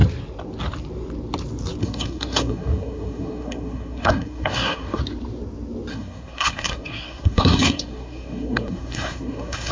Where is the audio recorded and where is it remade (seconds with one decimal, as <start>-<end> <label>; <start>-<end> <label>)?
0.0-1.8 recorded; 1.8-5.0 remade; 5.0-5.9 recorded; 5.9-9.7 remade